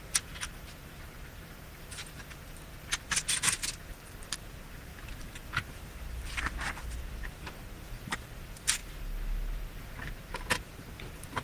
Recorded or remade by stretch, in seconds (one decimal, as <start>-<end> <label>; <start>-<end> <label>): 0.0-8.8 remade; 8.8-10.6 recorded; 10.6-11.4 remade